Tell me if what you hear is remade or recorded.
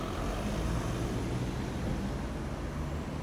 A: recorded